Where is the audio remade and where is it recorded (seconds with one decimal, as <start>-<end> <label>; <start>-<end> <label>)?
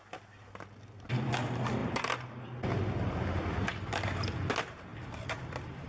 0.0-5.9 recorded